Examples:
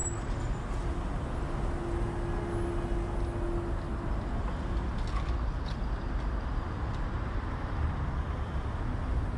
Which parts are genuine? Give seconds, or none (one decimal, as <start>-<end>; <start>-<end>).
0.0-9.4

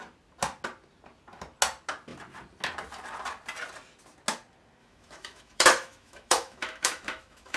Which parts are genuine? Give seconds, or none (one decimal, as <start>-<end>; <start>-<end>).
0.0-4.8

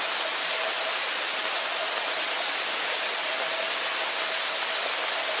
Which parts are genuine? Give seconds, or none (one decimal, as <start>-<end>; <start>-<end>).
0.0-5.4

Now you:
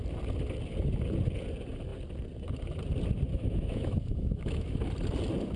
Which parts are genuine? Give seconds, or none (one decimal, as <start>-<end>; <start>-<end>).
0.0-3.3; 4.9-5.6